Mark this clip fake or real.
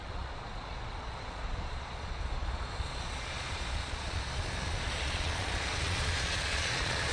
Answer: fake